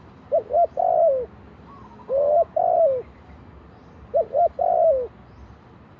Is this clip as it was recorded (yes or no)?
yes